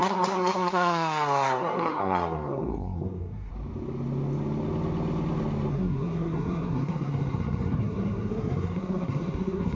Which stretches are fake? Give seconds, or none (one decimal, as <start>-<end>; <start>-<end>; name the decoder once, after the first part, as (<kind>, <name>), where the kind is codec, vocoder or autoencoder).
0.0-3.5 (codec, SNAC); 5.7-9.8